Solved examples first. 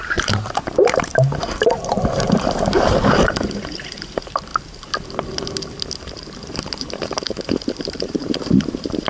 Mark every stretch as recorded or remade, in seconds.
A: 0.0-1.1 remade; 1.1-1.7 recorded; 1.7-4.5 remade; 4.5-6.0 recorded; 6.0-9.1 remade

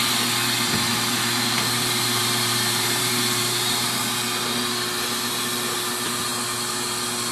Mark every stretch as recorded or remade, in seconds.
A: 0.0-0.9 recorded; 0.9-4.0 remade; 4.0-7.3 recorded

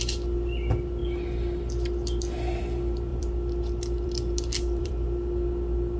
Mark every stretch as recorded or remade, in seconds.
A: 0.0-3.1 recorded; 3.1-4.9 remade; 4.9-6.0 recorded

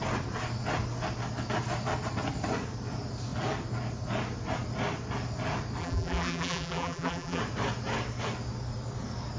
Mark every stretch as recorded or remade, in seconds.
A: 0.0-5.8 recorded; 5.8-7.4 remade; 7.4-9.4 recorded